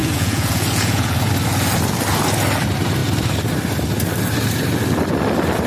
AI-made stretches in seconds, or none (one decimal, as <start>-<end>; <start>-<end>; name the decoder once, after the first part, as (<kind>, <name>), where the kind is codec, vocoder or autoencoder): 0.0-1.3 (vocoder, Vocos)